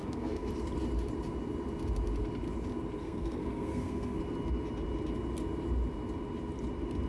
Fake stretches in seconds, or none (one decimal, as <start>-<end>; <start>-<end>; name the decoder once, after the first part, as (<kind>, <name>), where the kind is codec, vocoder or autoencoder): 0.0-0.5 (codec, SNAC); 3.0-4.2